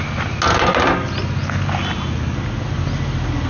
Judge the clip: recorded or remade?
recorded